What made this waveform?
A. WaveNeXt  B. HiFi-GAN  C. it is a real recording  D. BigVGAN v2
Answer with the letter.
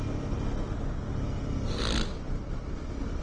C